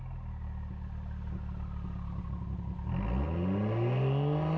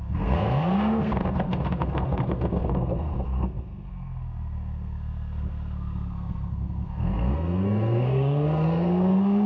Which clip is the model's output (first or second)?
second